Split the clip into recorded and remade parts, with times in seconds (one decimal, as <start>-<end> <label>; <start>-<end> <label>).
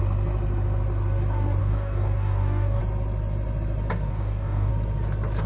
0.0-1.6 recorded; 1.6-2.8 remade; 2.8-4.1 recorded; 4.1-4.7 remade; 4.7-5.5 recorded